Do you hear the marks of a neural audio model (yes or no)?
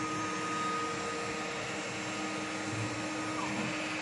no